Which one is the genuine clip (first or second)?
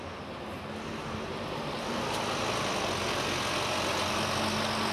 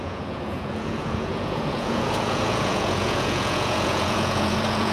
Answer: first